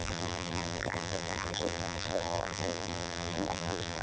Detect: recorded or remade remade